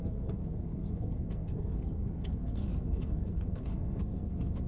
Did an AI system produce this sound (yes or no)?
yes